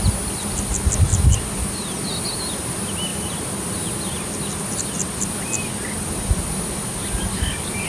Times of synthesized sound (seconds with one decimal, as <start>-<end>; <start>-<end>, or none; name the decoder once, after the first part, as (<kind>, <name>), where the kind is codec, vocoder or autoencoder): none